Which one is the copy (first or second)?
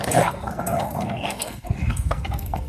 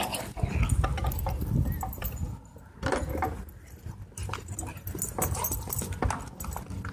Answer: first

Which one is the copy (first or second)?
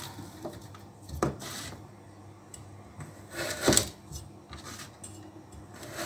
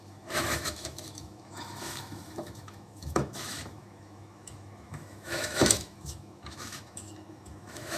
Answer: second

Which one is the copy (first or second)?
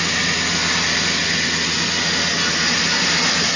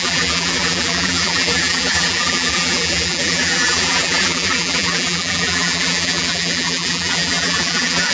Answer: second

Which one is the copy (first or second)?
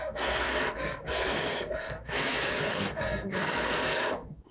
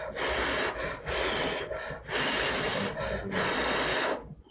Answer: first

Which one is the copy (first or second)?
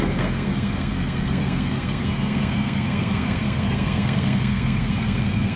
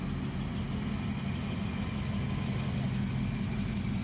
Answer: first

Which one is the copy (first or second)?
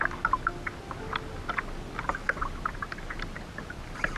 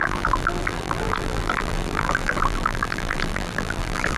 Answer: second